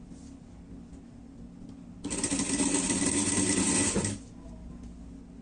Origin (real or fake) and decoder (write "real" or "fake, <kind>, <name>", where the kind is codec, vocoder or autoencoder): real